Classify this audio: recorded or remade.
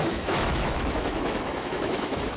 remade